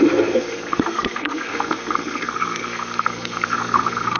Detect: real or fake fake